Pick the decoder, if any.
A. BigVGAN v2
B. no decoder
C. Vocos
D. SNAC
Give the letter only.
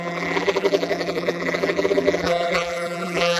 A